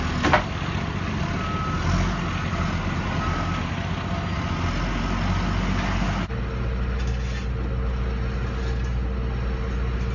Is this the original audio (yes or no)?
yes